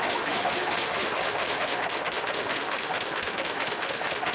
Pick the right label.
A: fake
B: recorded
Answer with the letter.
A